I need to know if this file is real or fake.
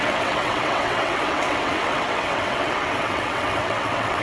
fake